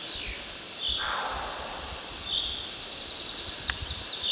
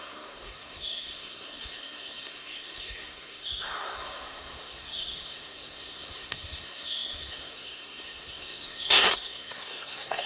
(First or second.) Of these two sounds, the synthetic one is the second